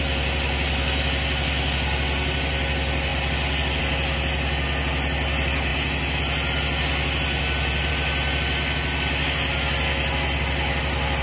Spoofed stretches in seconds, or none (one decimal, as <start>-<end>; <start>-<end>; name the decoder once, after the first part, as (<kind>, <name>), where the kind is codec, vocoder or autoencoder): none